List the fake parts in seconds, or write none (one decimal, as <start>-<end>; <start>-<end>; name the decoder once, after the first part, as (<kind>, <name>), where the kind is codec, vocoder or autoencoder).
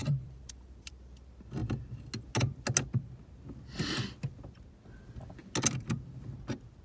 0.0-0.9 (vocoder, BigVGAN v2)